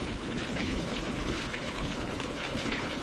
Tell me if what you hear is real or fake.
fake